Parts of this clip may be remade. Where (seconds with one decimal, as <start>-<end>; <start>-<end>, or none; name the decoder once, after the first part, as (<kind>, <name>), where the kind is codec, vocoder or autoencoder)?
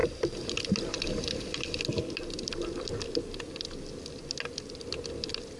0.0-3.4 (vocoder, BigVGAN v2)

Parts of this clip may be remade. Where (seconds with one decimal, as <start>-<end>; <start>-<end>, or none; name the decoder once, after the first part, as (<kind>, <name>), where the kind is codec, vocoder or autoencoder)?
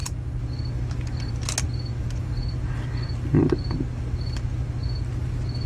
none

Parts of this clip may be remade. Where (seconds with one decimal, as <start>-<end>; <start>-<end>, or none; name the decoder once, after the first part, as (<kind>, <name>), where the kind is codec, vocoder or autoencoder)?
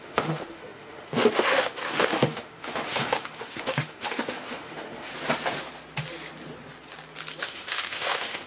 0.0-5.1 (autoencoder, DAC-VAE); 7.4-8.5